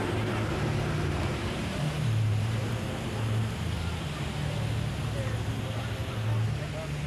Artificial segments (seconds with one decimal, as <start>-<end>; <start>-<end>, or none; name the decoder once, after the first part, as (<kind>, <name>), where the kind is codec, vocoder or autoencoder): 0.0-3.1 (vocoder, BigVGAN v2)